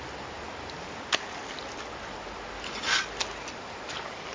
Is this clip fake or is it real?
real